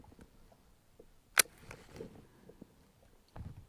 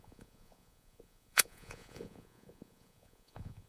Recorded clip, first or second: first